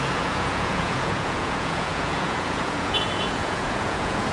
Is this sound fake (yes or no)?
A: yes